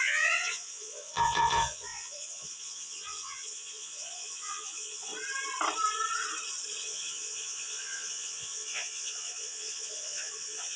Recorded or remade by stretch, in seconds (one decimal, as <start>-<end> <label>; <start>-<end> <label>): 0.0-5.1 remade; 5.1-6.8 recorded; 6.8-10.8 remade